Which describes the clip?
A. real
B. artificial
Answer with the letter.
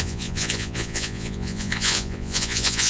B